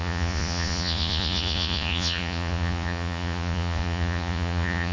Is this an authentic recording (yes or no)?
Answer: no